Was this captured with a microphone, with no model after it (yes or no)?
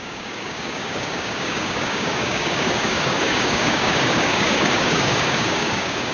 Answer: no